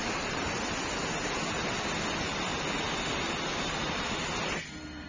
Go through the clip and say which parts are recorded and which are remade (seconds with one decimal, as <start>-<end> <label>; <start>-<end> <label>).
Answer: 0.0-0.6 remade; 0.6-5.1 recorded